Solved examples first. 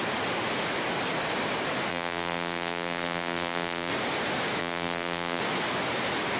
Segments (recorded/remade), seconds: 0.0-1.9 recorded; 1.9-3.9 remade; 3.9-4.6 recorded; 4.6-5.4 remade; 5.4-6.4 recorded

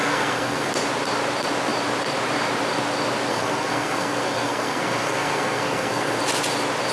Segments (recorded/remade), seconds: 0.0-0.7 remade; 0.7-3.3 recorded; 3.3-6.2 remade; 6.2-6.9 recorded

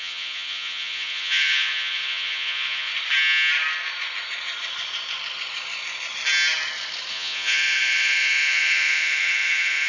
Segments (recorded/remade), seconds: 0.0-2.9 remade; 2.9-7.1 recorded; 7.1-9.9 remade

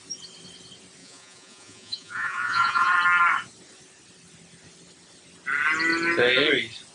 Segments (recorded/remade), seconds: 0.0-1.0 recorded; 1.0-2.9 remade; 2.9-6.9 recorded